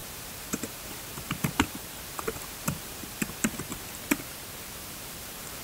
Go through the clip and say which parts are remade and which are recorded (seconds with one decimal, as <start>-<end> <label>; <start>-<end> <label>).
0.0-3.7 remade; 3.7-4.9 recorded; 4.9-5.6 remade